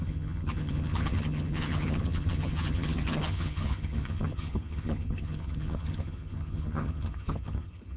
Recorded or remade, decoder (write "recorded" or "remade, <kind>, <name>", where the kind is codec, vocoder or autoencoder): remade, vocoder, HiFi-GAN